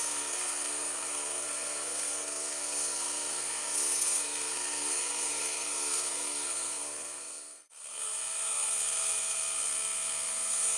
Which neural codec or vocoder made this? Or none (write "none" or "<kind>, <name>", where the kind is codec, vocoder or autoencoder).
codec, SNAC